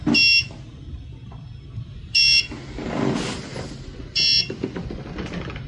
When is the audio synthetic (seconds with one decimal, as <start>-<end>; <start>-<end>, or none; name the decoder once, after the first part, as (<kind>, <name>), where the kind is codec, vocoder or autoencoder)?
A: none